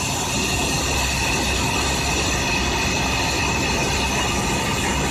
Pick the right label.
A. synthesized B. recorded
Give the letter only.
B